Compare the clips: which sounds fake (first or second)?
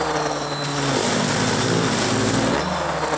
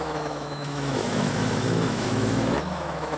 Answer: second